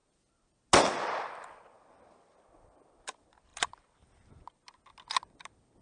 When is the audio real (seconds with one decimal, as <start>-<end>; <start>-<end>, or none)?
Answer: 0.0-5.8